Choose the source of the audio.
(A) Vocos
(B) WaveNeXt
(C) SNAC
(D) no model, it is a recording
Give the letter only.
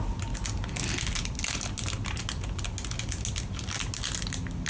D